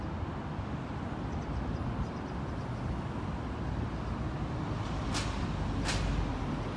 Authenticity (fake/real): real